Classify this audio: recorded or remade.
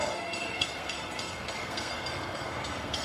remade